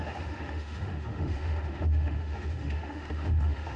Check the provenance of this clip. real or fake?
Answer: fake